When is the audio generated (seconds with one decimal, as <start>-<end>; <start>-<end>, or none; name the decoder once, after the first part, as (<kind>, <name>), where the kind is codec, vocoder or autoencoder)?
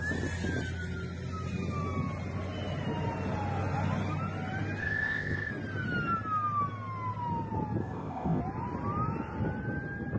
4.8-5.5 (codec, ZipCodec); 7.8-8.4